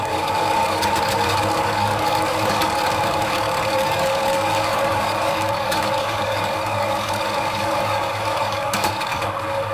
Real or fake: fake